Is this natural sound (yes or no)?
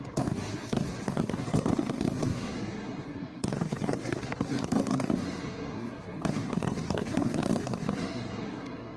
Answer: no